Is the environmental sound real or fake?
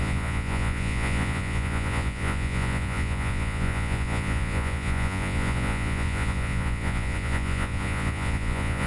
fake